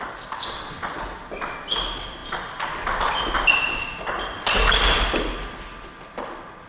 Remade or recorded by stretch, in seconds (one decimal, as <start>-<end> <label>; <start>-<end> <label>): 0.0-6.7 recorded